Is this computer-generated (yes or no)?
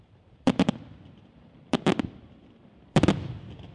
yes